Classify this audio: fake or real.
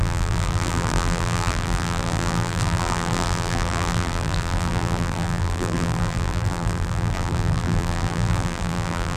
fake